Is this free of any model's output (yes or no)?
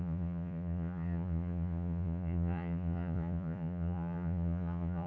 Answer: no